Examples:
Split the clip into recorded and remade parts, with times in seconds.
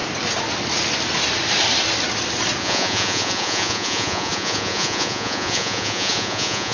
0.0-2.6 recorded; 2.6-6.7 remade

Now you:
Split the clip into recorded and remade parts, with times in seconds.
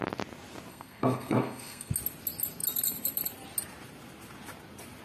0.0-0.7 recorded; 0.7-1.9 remade; 1.9-5.0 recorded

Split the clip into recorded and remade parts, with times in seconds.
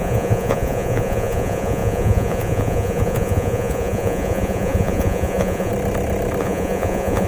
0.0-5.7 remade; 5.7-6.4 recorded; 6.4-7.3 remade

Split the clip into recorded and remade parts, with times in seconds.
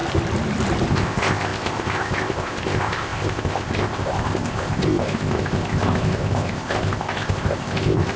0.0-0.9 recorded; 0.9-8.2 remade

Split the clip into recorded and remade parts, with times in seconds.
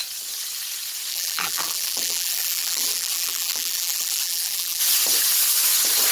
0.0-1.1 recorded; 1.1-4.8 remade; 4.8-6.1 recorded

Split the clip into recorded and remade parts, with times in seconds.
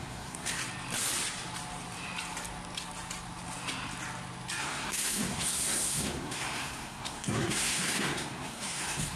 0.0-0.6 remade; 0.6-4.6 recorded; 4.6-9.2 remade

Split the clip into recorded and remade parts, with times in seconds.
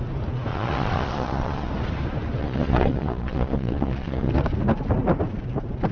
0.0-0.5 recorded; 0.5-1.7 remade; 1.7-2.4 recorded; 2.4-4.3 remade; 4.3-5.9 recorded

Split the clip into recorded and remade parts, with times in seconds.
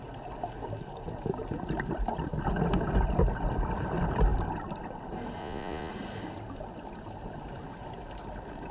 0.0-5.4 recorded; 5.4-5.9 remade; 5.9-8.7 recorded